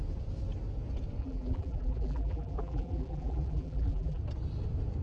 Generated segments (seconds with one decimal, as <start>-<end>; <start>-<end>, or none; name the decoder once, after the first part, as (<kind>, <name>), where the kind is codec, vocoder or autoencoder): 1.2-4.2 (vocoder, BigVGAN v2)